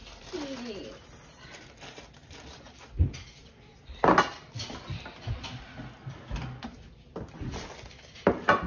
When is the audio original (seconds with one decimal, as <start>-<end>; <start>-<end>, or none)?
0.0-8.7